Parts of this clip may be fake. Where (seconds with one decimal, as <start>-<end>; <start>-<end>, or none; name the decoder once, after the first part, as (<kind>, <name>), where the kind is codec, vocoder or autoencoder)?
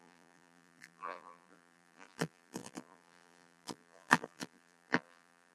0.0-5.5 (vocoder, BigVGAN v2)